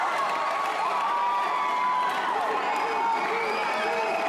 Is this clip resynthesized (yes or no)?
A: no